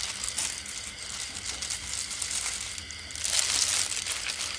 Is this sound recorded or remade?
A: recorded